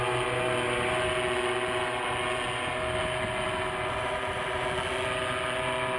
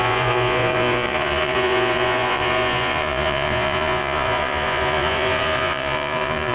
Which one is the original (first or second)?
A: first